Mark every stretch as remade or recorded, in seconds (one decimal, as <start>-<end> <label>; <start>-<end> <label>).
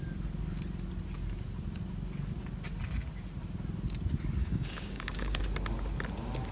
0.0-4.4 recorded; 4.4-5.4 remade; 5.4-6.5 recorded